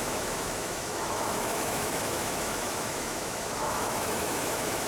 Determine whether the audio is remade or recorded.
remade